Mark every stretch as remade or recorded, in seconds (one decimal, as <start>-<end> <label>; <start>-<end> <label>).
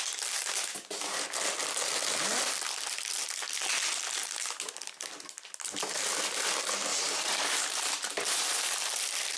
0.0-6.9 recorded; 6.9-8.5 remade; 8.5-9.4 recorded